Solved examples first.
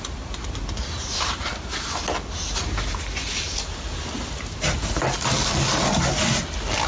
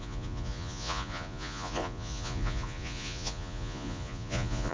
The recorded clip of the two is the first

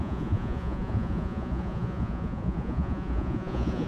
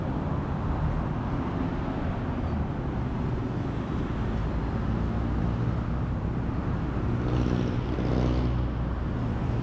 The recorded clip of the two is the second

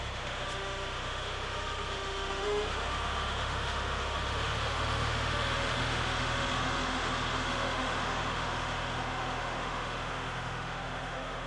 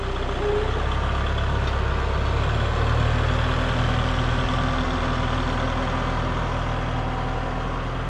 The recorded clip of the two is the second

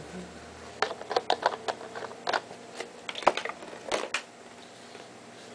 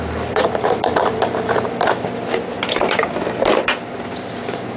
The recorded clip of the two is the first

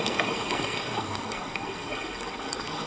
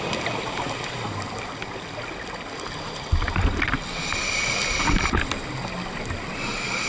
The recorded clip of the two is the second